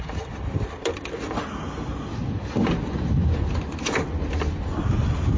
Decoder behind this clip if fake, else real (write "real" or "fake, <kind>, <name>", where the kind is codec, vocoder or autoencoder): real